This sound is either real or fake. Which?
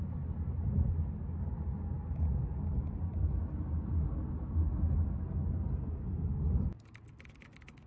real